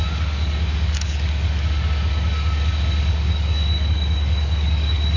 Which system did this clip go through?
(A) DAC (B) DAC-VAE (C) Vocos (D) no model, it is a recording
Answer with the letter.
A